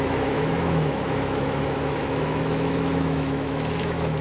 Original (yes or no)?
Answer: no